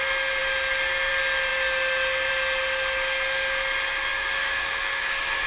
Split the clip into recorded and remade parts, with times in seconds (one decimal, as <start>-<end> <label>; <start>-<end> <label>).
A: 0.0-4.1 recorded; 4.1-5.5 remade